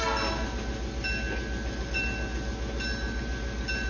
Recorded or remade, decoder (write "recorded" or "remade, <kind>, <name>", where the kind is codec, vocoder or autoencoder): recorded